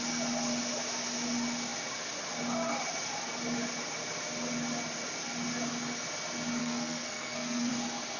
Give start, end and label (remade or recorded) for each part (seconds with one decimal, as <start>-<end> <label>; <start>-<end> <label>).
0.0-6.6 recorded; 6.6-7.7 remade; 7.7-8.2 recorded